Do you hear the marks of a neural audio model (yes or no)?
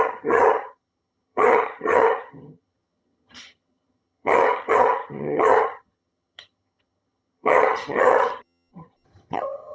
yes